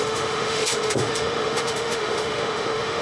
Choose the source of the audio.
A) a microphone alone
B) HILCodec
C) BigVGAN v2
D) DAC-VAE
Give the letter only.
D